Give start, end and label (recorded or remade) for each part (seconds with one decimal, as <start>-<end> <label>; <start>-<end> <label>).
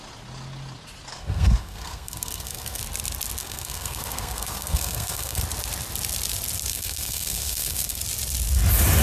0.0-1.1 recorded; 1.1-2.8 remade; 2.8-3.4 recorded; 3.4-5.4 remade; 5.4-6.7 recorded; 6.7-8.0 remade; 8.0-9.0 recorded